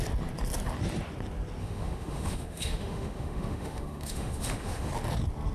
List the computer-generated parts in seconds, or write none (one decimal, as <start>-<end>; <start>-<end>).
1.6-4.9